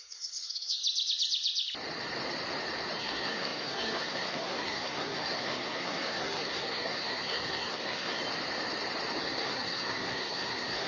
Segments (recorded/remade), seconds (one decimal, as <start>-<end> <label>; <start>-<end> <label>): 0.0-0.8 remade; 0.8-3.0 recorded; 3.0-8.2 remade; 8.2-9.2 recorded; 9.2-10.9 remade